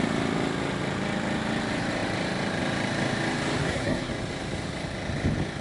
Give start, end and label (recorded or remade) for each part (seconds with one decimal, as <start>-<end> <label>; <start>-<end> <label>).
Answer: 0.0-3.6 recorded; 3.6-4.1 remade; 4.1-5.6 recorded